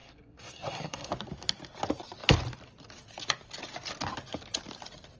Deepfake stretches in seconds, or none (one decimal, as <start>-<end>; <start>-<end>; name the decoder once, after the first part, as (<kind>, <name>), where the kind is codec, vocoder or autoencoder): 0.0-1.1 (codec, SNAC)